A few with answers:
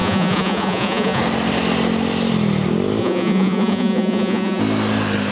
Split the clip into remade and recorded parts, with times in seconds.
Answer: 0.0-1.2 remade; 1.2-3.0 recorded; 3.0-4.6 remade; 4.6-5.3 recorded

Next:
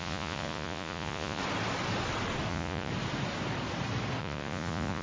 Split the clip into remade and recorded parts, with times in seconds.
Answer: 0.0-1.4 remade; 1.4-2.5 recorded; 2.5-2.9 remade; 2.9-4.2 recorded; 4.2-5.0 remade

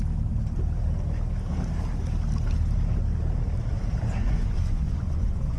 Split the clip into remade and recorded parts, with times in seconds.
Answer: 0.0-4.2 recorded; 4.2-5.6 remade

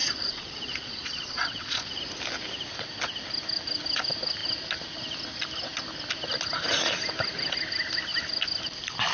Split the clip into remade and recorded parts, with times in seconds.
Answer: 0.0-2.0 remade; 2.0-9.1 recorded

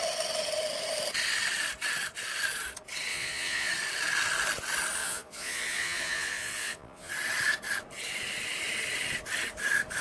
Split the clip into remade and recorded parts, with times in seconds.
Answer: 0.0-3.1 recorded; 3.1-3.7 remade; 3.7-5.0 recorded; 5.0-7.1 remade; 7.1-10.0 recorded

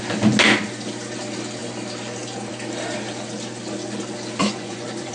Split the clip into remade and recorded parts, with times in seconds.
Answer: 0.0-4.4 recorded; 4.4-5.1 remade

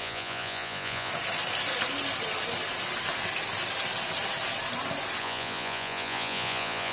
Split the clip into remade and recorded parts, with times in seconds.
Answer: 0.0-1.1 remade; 1.1-5.2 recorded; 5.2-6.9 remade

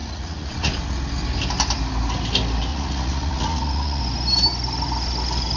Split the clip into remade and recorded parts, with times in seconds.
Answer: 0.0-0.7 remade; 0.7-2.7 recorded; 2.7-4.0 remade; 4.0-5.6 recorded